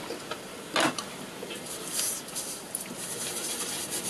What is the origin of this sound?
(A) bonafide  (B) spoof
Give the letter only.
A